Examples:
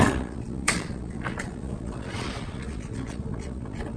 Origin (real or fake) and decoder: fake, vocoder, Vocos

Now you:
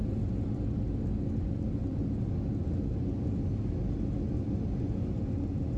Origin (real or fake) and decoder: real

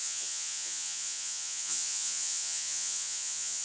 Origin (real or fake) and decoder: fake, vocoder, Vocos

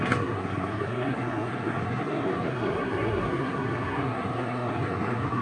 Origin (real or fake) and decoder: fake, codec, SNAC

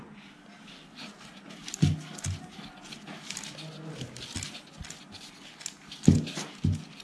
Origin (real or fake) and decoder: real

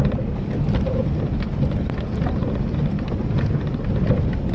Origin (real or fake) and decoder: real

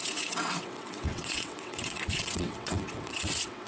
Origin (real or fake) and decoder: fake, vocoder, WaveNeXt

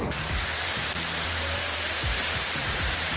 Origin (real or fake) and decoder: fake, vocoder, BigVGAN v2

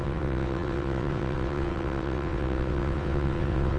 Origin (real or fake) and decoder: fake, vocoder, WaveNeXt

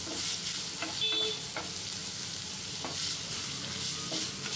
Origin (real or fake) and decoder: real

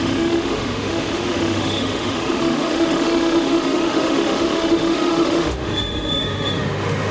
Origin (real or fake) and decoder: fake, autoencoder, DAC-VAE